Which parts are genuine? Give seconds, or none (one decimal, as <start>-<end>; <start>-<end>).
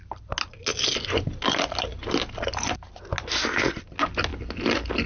0.0-5.1